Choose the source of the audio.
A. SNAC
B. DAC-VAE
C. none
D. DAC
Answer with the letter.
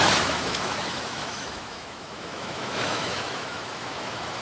B